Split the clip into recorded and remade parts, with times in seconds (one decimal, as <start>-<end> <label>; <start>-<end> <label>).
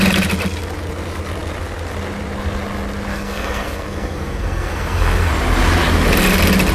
0.0-3.1 recorded; 3.1-5.3 remade; 5.3-6.7 recorded